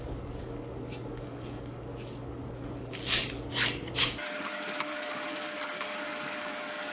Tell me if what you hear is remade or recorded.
remade